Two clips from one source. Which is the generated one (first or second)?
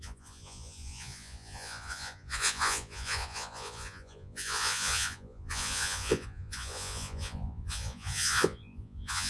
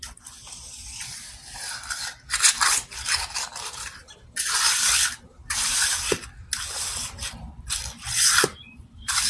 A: first